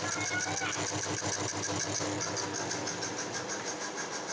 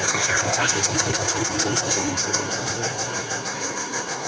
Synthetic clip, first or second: second